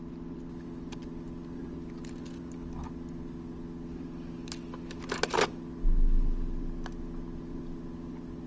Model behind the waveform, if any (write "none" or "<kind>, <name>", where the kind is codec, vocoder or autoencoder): none